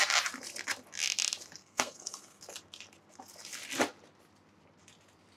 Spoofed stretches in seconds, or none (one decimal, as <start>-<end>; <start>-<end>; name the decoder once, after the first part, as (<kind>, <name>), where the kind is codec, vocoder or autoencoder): 1.6-2.4 (codec, SNAC)